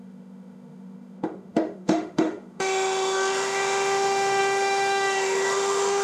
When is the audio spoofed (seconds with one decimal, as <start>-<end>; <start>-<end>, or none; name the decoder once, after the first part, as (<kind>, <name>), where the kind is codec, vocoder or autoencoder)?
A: 0.0-6.0 (autoencoder, DAC-VAE)